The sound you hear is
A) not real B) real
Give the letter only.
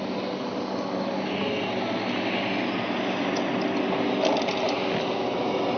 B